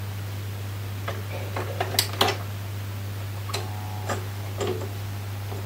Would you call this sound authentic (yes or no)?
yes